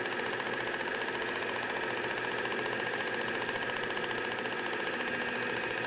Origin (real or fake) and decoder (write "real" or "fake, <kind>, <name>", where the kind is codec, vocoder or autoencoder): real